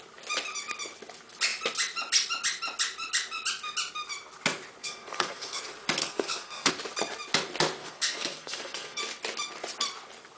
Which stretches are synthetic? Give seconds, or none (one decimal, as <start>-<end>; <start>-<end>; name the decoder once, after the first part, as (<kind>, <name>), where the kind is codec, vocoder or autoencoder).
4.8-5.6 (codec, SNAC); 6.0-6.7; 7.8-9.0